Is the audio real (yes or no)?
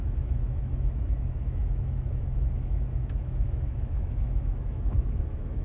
no